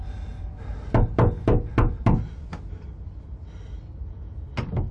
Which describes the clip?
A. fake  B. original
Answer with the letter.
B